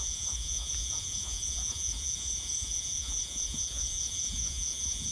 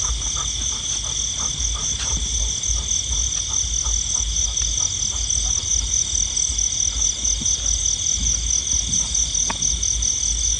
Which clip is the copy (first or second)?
first